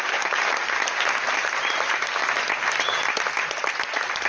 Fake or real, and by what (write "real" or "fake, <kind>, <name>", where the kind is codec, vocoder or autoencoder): fake, vocoder, BigVGAN v2